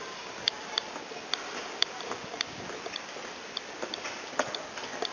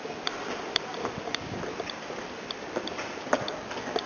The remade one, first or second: second